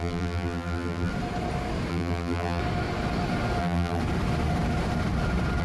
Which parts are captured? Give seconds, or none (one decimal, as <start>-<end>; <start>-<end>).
1.1-1.9; 2.6-3.6; 4.0-5.6